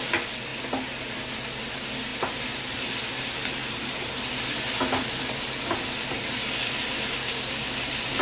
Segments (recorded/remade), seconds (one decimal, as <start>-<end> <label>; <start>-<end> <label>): 0.0-8.2 recorded